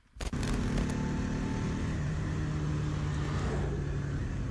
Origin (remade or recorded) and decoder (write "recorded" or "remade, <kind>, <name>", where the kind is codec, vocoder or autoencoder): recorded